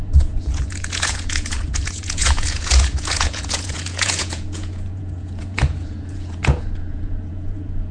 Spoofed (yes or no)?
yes